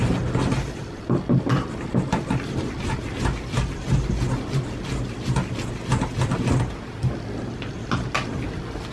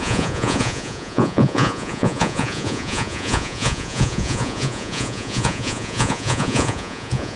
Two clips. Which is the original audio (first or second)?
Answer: first